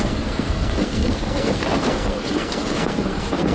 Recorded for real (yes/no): no